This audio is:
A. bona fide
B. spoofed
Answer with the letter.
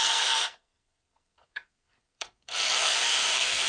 B